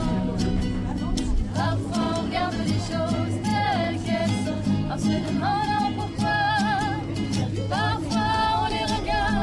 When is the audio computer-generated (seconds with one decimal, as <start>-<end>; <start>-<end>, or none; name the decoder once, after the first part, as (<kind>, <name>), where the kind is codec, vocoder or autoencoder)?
0.0-7.4 (vocoder, BigVGAN v2); 7.9-9.4